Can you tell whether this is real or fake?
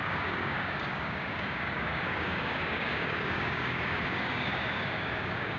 fake